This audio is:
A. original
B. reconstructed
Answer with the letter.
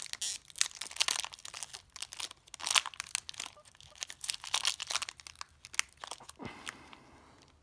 A